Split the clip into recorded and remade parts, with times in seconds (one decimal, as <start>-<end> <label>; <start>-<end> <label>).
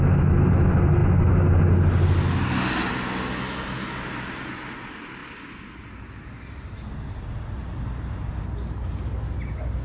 0.0-9.8 recorded